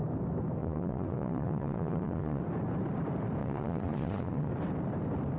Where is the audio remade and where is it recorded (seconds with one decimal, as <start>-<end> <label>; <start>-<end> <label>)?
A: 0.0-0.6 recorded; 0.6-2.4 remade; 2.4-3.4 recorded; 3.4-4.5 remade; 4.5-5.4 recorded